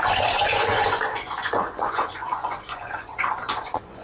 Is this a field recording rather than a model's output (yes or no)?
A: no